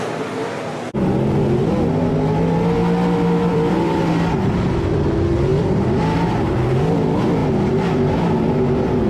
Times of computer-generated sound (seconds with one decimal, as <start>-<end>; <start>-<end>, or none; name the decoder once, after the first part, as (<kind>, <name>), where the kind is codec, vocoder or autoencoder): 1.6-2.1 (vocoder, BigVGAN v2); 3.5-4.1; 5.5-6.0; 7.4-9.1